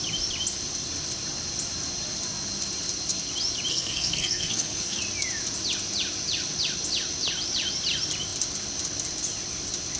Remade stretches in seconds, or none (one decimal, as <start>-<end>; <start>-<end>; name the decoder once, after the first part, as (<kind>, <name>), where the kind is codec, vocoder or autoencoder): 3.7-5.0 (codec, SNAC)